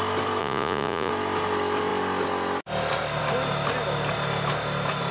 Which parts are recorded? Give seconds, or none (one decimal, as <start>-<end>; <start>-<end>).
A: 0.0-0.4; 1.1-5.1